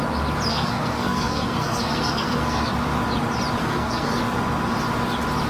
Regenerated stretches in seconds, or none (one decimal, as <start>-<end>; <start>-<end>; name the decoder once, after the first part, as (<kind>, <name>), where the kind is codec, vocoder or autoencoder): 0.5-2.7 (codec, SNAC); 3.6-4.2